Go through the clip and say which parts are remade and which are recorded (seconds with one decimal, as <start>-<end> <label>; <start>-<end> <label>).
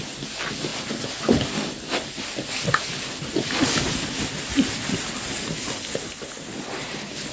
0.0-7.3 recorded